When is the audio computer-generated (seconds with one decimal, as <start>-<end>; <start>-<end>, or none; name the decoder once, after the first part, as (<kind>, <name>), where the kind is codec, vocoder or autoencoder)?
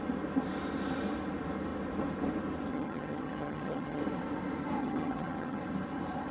2.7-4.0 (vocoder, HiFi-GAN); 4.8-5.6